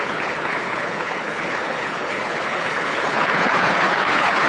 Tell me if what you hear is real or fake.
fake